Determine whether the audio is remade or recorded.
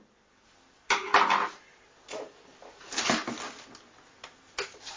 recorded